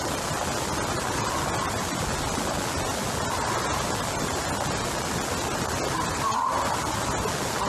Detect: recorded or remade recorded